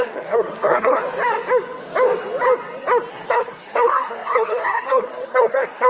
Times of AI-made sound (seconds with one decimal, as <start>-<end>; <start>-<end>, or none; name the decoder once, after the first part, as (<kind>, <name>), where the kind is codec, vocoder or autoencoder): 0.0-1.0 (codec, SNAC); 3.1-5.9